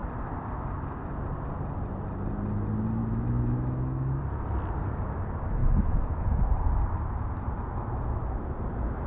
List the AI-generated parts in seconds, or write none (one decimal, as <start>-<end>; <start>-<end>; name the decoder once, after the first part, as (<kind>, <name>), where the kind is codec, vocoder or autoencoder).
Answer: 3.0-4.2 (autoencoder, DAC-VAE); 5.6-6.4